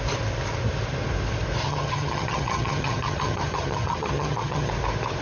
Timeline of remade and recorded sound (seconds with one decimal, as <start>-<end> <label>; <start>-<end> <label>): 0.0-1.6 recorded; 1.6-4.7 remade; 4.7-5.2 recorded